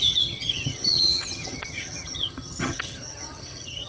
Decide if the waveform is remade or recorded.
remade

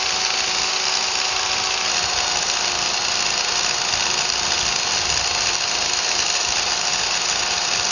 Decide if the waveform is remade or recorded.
recorded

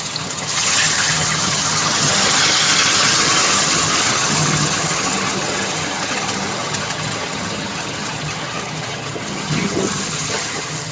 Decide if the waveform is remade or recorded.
remade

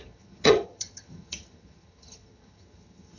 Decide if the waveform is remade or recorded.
remade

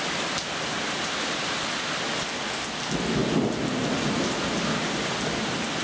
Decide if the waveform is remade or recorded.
recorded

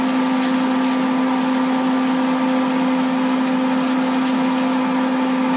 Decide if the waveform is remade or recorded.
recorded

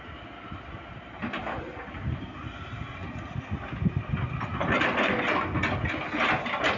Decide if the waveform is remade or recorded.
recorded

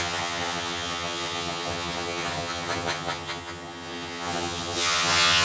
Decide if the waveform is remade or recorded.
remade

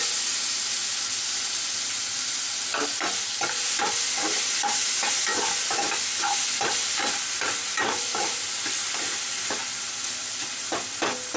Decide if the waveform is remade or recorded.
recorded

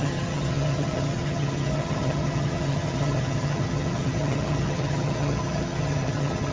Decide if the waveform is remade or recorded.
remade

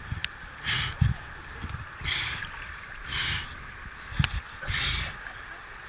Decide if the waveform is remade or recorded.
recorded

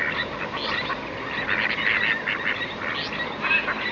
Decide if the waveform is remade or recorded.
recorded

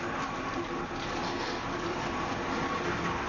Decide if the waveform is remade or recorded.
recorded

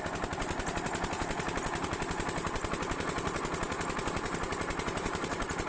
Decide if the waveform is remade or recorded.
recorded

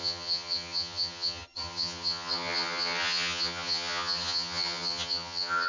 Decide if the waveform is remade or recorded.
remade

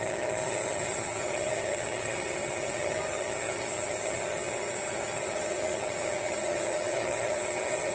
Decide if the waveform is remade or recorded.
remade